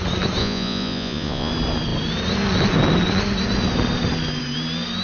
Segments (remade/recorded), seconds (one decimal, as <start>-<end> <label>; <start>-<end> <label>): 0.0-0.4 recorded; 0.4-1.5 remade; 1.5-5.0 recorded